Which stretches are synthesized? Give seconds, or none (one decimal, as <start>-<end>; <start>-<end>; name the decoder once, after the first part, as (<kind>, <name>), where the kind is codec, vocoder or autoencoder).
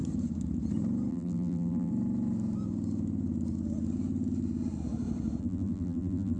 1.1-1.9 (vocoder, BigVGAN v2); 5.4-6.4